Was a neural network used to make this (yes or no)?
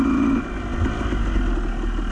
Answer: no